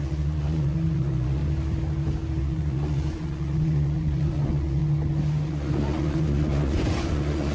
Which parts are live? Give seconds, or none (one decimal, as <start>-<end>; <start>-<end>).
1.4-2.4; 4.8-5.5